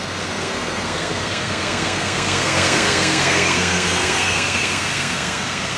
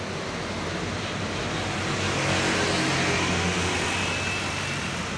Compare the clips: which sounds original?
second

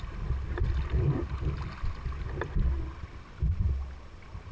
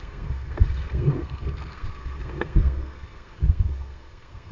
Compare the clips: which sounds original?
first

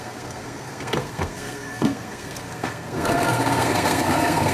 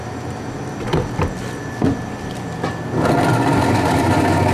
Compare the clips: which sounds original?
second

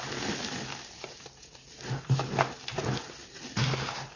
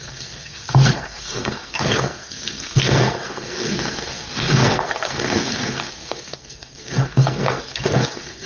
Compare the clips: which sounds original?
first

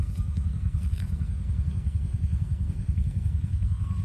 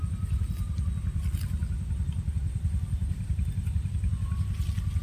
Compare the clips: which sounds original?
second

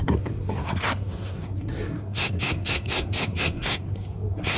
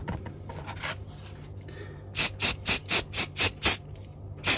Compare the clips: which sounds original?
second